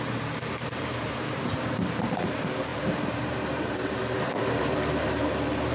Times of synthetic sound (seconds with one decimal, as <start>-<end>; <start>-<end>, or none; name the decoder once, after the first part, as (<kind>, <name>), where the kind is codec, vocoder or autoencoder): 0.0-5.7 (vocoder, BigVGAN v2)